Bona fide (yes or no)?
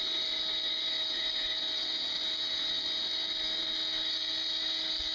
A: yes